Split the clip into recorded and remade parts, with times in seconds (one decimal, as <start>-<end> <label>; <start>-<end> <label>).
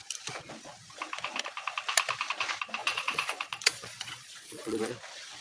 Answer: 0.0-2.8 recorded; 2.8-4.9 remade; 4.9-5.4 recorded